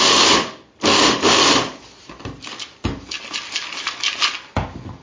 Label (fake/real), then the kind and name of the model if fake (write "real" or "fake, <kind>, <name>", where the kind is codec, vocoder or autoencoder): real